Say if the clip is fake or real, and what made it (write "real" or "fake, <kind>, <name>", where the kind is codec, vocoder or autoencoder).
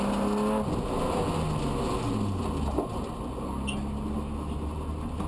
real